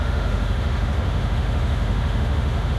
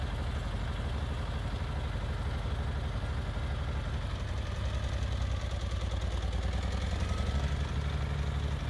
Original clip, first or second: second